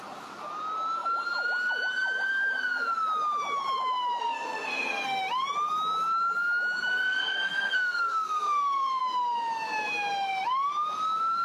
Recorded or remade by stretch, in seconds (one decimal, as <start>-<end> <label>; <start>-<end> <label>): 0.0-4.2 recorded; 4.2-5.2 remade; 5.2-6.9 recorded; 6.9-9.0 remade; 9.0-11.4 recorded